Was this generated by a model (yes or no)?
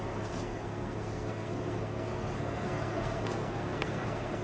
yes